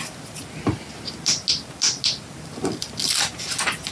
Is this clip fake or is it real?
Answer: real